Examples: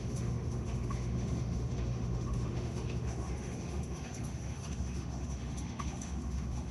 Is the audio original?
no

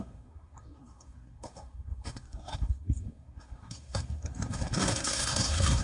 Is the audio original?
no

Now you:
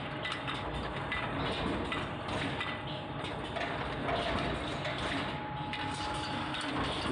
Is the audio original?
yes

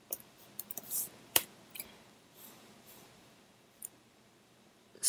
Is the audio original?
no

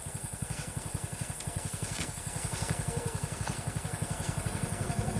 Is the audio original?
no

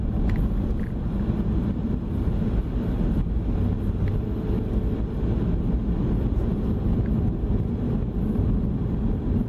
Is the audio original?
yes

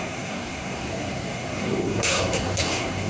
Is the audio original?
no